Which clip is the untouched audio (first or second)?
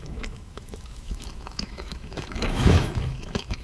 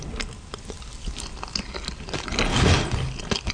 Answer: second